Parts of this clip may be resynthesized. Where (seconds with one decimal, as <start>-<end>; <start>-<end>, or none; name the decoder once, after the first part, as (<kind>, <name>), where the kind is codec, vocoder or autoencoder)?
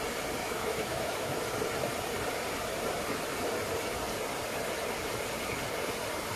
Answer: 0.4-1.3 (autoencoder, DAC-VAE)